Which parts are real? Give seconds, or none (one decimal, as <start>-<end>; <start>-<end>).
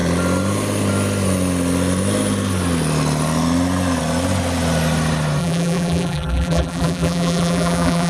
0.0-5.4